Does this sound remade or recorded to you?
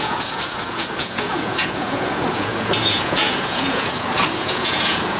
remade